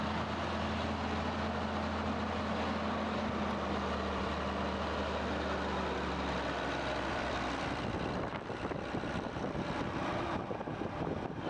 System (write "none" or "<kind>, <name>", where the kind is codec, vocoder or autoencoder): vocoder, BigVGAN v2